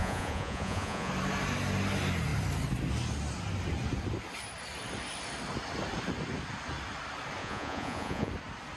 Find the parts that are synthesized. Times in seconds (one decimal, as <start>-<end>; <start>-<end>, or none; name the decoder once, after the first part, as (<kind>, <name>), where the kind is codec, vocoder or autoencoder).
0.0-1.1 (vocoder, Vocos); 7.4-8.3